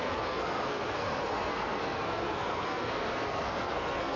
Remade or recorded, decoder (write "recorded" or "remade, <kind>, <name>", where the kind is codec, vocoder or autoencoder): remade, codec, SNAC